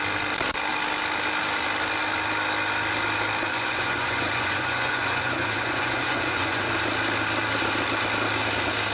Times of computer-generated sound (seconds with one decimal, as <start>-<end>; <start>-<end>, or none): 3.5-6.7